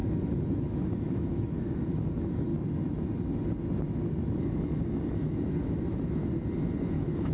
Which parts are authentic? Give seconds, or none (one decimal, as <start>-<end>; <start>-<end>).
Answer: 2.5-4.4; 6.2-6.8